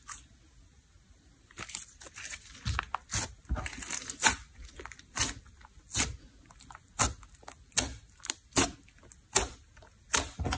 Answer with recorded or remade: recorded